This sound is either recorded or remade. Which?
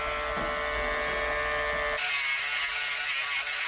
recorded